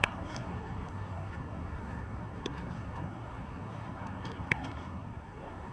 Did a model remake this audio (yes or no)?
yes